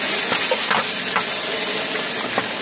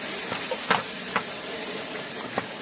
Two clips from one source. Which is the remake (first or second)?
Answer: second